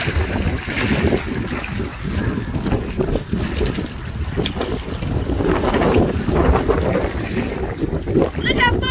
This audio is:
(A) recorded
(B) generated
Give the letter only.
A